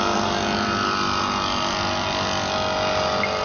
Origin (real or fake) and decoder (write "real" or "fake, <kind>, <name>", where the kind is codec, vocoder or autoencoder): real